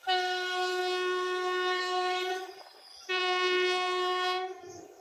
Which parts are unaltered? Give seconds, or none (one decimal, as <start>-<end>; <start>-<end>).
2.3-3.1